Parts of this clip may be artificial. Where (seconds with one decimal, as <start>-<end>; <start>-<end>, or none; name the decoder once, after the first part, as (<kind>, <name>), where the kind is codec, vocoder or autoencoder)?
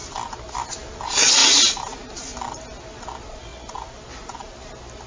none